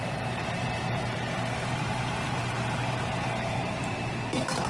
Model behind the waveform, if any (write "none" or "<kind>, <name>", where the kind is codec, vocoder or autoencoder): vocoder, BigVGAN v2